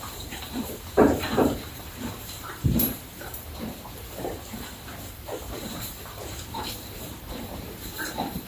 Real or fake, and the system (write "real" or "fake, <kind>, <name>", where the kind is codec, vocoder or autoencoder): fake, vocoder, BigVGAN v2